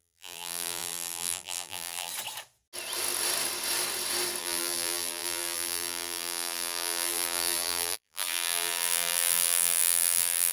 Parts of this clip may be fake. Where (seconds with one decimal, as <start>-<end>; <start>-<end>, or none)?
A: 0.0-2.1; 4.4-10.5